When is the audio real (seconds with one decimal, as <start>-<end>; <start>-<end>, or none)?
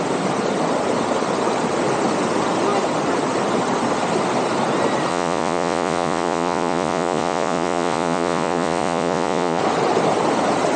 0.0-5.1; 9.6-10.8